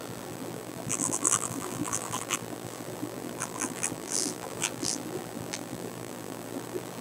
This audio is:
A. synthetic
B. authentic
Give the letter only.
A